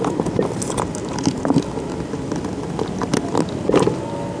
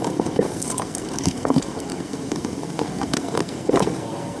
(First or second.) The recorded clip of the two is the first